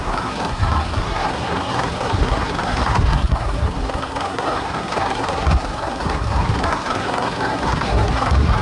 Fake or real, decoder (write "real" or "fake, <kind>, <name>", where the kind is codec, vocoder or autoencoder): fake, codec, SNAC